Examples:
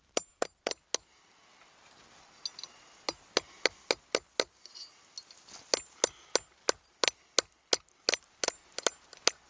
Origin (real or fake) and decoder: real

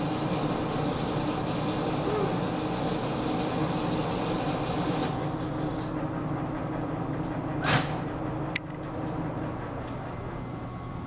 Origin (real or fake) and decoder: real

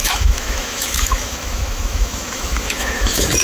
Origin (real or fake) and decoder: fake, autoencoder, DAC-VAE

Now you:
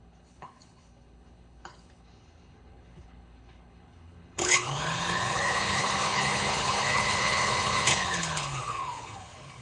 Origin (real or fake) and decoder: fake, codec, HILCodec